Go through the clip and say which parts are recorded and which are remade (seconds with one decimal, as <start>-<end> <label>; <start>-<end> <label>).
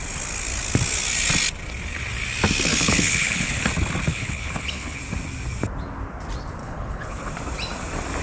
0.0-2.7 recorded; 2.7-3.6 remade; 3.6-4.1 recorded; 4.1-5.0 remade; 5.0-6.6 recorded; 6.6-7.3 remade; 7.3-8.2 recorded